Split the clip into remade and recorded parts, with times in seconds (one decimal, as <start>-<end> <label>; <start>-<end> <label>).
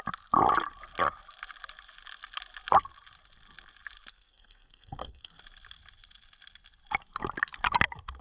0.0-4.1 recorded; 4.1-5.4 remade; 5.4-8.2 recorded